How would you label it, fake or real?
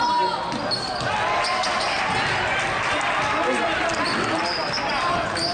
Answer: real